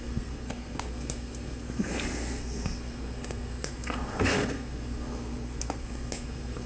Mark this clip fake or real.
fake